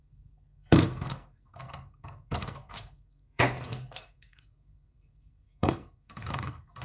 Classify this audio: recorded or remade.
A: remade